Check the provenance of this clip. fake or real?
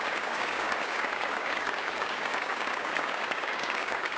fake